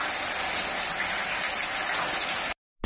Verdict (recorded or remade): recorded